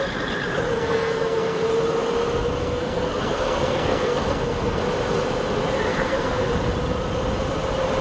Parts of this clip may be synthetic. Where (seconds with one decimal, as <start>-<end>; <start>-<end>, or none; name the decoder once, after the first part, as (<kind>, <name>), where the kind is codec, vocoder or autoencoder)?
0.7-1.7 (codec, SNAC); 2.6-4.8; 5.9-6.5